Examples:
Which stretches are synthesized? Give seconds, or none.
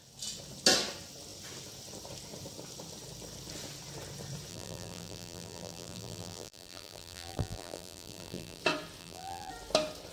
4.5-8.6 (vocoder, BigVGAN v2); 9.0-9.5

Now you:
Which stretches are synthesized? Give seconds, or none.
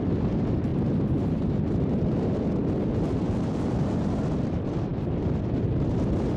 none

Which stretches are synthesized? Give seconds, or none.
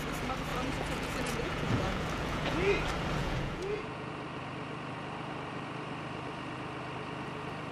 0.5-2.7 (vocoder, Vocos); 3.2-4.1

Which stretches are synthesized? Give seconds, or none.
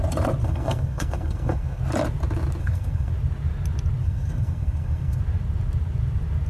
0.4-1.8 (codec, SNAC); 2.6-3.1; 4.0-5.2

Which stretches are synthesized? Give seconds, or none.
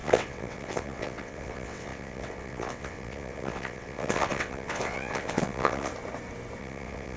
0.0-5.9 (vocoder, WaveNeXt); 6.6-7.2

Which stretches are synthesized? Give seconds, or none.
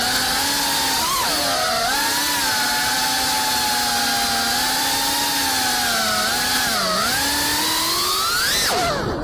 none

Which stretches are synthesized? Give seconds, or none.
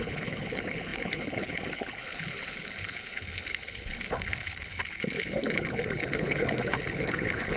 0.0-7.6 (codec, HILCodec)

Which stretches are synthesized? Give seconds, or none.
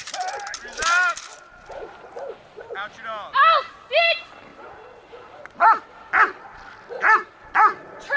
none